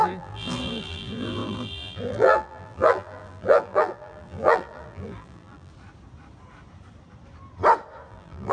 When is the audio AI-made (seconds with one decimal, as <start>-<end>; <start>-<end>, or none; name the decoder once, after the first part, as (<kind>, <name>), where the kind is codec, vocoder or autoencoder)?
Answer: 0.0-5.7 (vocoder, BigVGAN v2); 8.1-8.5